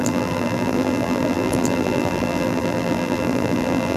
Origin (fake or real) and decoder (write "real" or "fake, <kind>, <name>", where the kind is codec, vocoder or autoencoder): fake, vocoder, BigVGAN v2